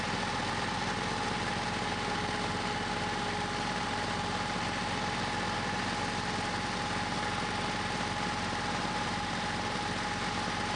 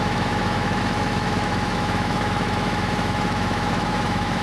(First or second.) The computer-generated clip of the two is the second